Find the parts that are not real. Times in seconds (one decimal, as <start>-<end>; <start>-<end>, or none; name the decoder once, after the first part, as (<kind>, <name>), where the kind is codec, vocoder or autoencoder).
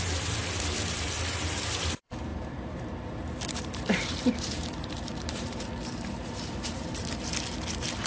2.3-7.0 (vocoder, BigVGAN v2)